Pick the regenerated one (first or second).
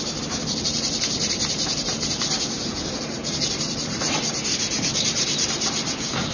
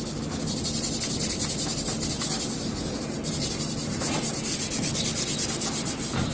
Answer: first